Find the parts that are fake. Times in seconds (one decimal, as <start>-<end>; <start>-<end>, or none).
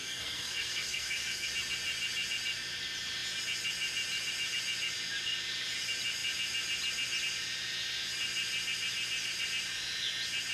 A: 0.0-1.5